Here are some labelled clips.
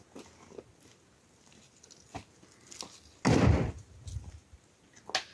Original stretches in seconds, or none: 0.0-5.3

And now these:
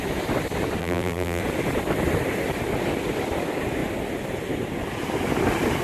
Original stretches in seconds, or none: 0.0-0.8; 1.4-5.8

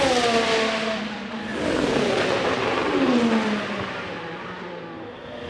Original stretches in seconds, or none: 0.0-1.5; 4.1-5.5

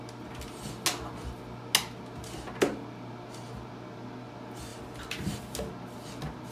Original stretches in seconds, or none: 0.0-4.7; 5.4-6.5

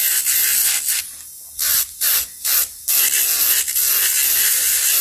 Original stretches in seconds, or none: 0.0-5.0

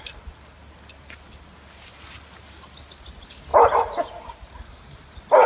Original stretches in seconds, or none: 0.0-5.5

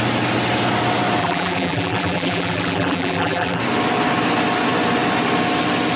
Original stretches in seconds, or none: 0.0-1.2; 3.6-6.0

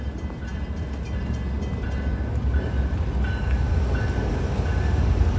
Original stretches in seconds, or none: 0.0-5.4